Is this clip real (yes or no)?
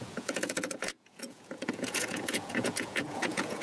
no